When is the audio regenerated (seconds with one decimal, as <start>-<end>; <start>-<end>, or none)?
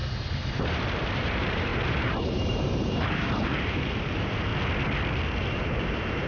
0.5-4.5; 5.5-6.3